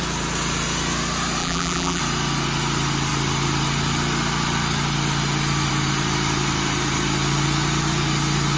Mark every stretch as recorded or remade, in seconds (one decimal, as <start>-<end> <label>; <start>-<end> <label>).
0.0-1.4 recorded; 1.4-2.0 remade; 2.0-8.6 recorded